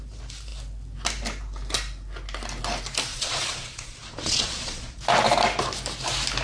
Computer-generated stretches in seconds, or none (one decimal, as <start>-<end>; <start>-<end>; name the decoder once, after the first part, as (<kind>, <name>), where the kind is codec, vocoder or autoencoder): 3.1-5.0 (vocoder, Vocos)